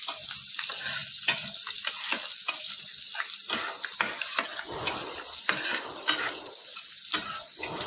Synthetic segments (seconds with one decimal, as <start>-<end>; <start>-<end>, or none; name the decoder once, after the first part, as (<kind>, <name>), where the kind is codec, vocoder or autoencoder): none